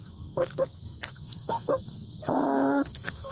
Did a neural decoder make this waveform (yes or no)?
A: yes